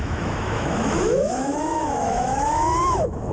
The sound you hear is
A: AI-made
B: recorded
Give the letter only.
A